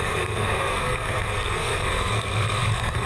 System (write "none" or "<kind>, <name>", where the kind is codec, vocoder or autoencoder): codec, SNAC